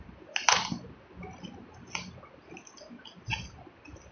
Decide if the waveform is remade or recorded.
recorded